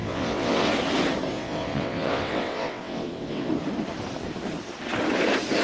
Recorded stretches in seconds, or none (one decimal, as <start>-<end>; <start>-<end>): 0.7-1.3; 3.5-5.6